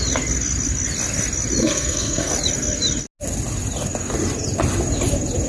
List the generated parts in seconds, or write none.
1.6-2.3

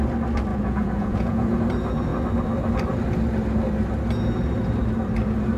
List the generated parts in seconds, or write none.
0.5-1.6

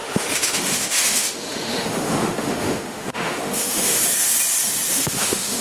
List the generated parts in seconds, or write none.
0.0-4.0; 4.9-5.6

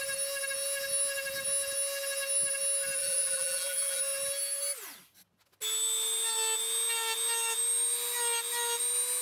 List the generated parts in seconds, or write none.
3.0-4.0